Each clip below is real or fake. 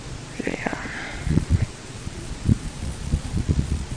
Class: fake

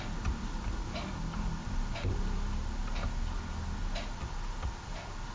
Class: real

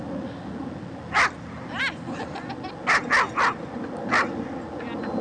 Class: real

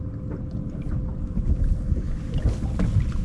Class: real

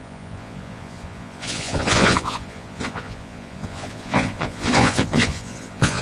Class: fake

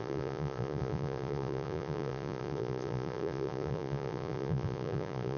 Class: fake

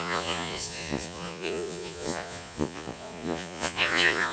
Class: fake